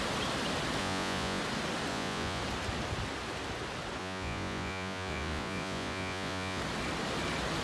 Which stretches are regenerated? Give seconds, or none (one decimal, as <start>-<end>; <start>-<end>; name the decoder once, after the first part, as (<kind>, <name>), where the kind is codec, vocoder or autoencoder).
0.8-1.4 (vocoder, Vocos); 1.9-2.4; 4.0-6.6